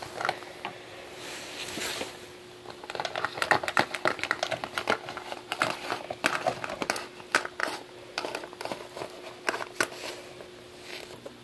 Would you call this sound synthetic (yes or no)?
no